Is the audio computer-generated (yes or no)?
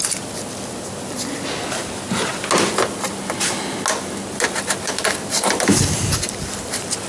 no